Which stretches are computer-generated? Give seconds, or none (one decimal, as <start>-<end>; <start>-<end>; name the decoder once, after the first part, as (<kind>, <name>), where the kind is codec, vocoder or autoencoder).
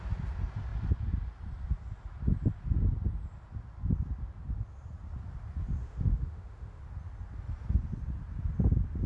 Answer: 5.8-6.8 (autoencoder, DAC-VAE)